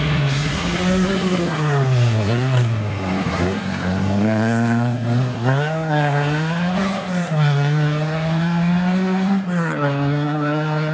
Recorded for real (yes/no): no